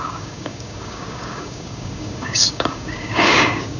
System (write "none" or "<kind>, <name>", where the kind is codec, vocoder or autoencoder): codec, DAC